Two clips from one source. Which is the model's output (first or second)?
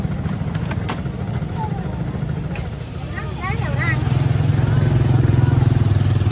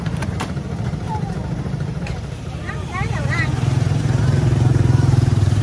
second